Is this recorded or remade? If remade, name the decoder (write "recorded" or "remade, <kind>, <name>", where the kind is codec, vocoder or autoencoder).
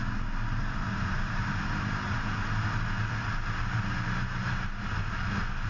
recorded